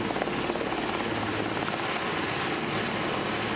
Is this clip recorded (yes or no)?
yes